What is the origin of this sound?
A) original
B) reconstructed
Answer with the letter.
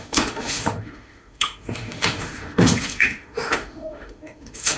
B